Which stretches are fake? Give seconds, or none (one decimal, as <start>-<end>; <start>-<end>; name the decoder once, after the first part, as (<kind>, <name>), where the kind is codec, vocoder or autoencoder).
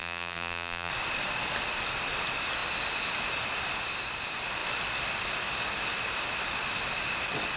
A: 0.0-0.9 (vocoder, BigVGAN v2)